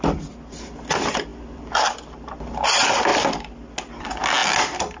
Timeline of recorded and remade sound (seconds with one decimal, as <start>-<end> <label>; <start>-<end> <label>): 0.0-5.0 recorded